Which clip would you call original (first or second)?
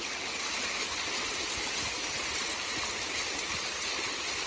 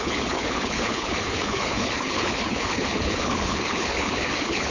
first